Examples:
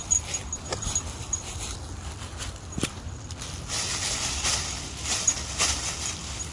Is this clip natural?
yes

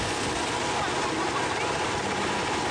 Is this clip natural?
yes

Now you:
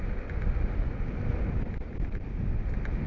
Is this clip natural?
yes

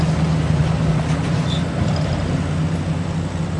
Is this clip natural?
yes